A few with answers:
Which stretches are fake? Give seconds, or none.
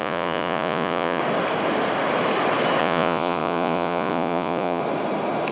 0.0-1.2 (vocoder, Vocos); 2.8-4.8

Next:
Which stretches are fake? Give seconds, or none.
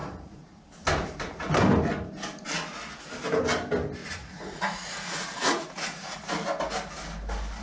0.0-0.6 (vocoder, Vocos); 4.0-6.3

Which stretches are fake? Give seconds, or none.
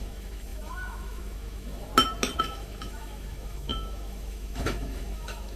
0.0-1.9 (autoencoder, DAC-VAE); 2.4-5.6